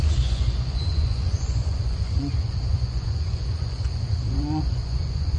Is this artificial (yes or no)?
yes